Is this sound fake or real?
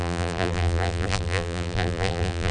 fake